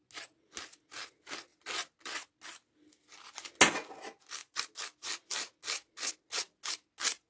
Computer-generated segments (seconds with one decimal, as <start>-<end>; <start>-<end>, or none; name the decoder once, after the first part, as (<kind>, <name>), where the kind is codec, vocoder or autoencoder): none